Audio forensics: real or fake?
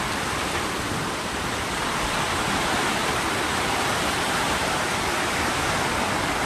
fake